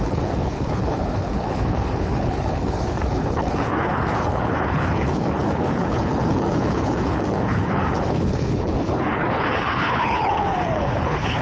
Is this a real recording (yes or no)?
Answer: no